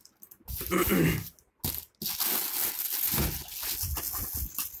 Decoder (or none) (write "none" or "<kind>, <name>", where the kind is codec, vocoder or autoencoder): none